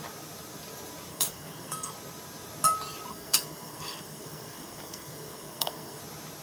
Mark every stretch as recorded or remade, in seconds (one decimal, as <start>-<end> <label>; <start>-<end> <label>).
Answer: 0.0-1.1 recorded; 1.1-1.9 remade; 1.9-3.1 recorded; 3.1-6.0 remade; 6.0-6.4 recorded